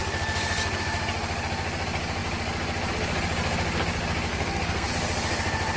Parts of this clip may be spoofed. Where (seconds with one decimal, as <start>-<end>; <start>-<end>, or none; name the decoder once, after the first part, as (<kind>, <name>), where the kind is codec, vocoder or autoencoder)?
4.3-4.9 (codec, SNAC)